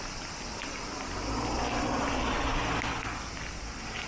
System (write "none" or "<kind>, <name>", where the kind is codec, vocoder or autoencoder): none